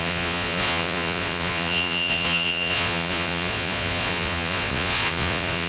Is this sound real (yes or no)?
no